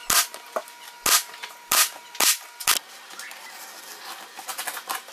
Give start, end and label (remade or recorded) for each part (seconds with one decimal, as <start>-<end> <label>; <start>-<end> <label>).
0.0-5.1 recorded